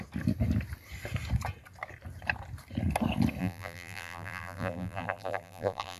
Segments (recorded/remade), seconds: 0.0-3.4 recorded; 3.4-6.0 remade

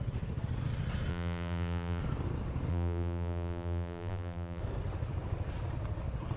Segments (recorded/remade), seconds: 0.0-1.1 recorded; 1.1-2.0 remade; 2.0-2.7 recorded; 2.7-4.6 remade; 4.6-6.4 recorded

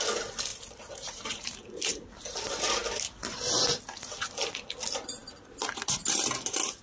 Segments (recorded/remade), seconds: 0.0-0.5 recorded; 0.5-2.1 remade; 2.1-6.8 recorded

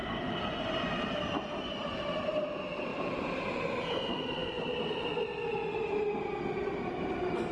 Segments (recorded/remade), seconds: 0.0-0.5 remade; 0.5-2.9 recorded; 2.9-4.0 remade; 4.0-4.4 recorded; 4.4-5.1 remade; 5.1-7.5 recorded